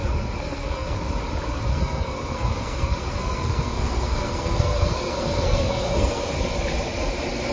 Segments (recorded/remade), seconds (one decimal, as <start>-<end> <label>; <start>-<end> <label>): 0.0-1.0 remade; 1.0-1.7 recorded; 1.7-6.2 remade; 6.2-7.5 recorded